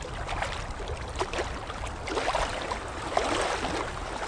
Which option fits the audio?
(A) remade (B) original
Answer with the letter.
B